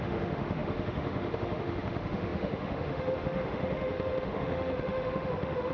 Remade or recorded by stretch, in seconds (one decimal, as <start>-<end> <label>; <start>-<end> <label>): 0.0-5.7 remade